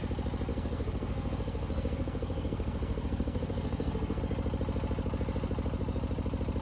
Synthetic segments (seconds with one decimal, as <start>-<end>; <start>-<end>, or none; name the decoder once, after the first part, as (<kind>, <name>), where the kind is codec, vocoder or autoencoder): 0.5-4.2 (codec, SNAC)